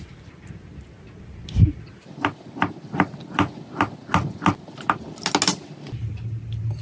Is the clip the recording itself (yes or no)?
yes